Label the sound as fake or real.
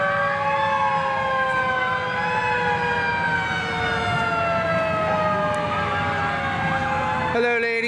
real